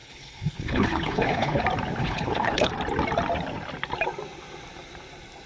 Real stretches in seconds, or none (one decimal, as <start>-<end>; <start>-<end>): 1.6-2.0; 2.7-5.5